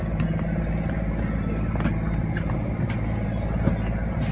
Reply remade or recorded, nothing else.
recorded